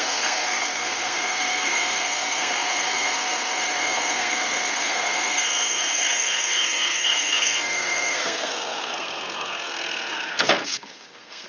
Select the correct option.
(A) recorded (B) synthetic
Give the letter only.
B